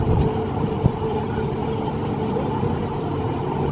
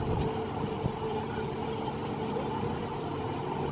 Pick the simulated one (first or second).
first